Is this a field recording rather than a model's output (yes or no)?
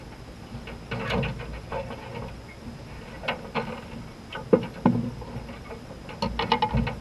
yes